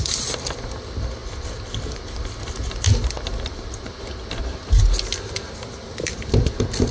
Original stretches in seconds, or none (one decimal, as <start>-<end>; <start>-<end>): 0.0-6.9